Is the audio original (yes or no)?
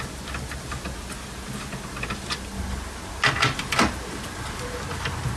yes